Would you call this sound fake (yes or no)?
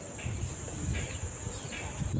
no